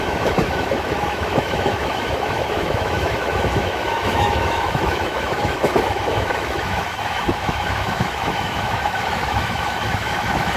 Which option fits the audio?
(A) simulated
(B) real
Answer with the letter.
A